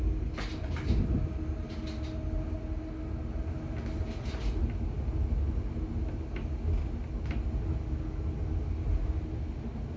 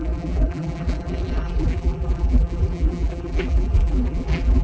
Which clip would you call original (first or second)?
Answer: first